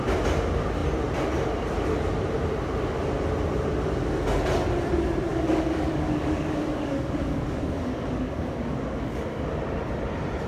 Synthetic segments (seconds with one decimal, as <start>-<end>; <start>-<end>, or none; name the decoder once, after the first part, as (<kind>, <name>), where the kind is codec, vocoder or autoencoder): 5.3-9.5 (codec, DAC)